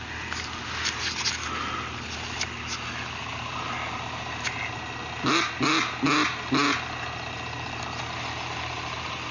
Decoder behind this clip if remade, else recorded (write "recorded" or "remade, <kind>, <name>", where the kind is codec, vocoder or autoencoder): recorded